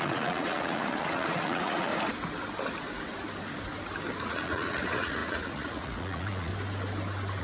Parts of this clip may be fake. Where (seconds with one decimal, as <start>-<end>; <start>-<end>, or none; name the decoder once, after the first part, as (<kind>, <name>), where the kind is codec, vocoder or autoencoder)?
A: 0.0-1.9 (vocoder, Vocos); 4.2-6.5